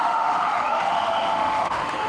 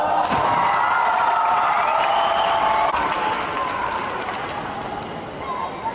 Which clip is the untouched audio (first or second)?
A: second